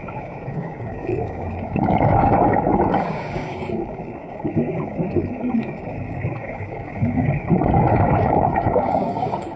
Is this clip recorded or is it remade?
remade